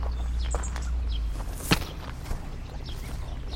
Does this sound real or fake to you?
real